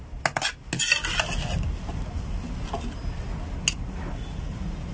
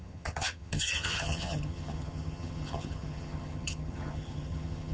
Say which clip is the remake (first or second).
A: second